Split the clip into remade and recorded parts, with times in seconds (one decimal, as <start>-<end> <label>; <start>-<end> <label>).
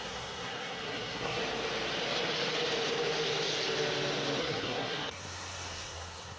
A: 0.0-1.4 remade; 1.4-4.4 recorded; 4.4-6.4 remade